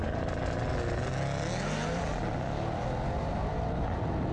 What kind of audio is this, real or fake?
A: real